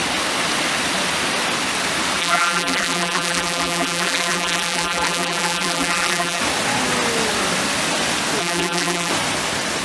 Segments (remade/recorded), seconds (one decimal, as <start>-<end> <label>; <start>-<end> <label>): 0.0-2.2 recorded; 2.2-6.4 remade; 6.4-8.4 recorded; 8.4-9.1 remade; 9.1-9.8 recorded